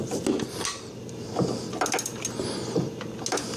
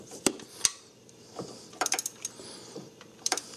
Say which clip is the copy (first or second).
second